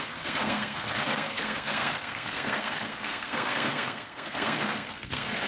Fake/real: fake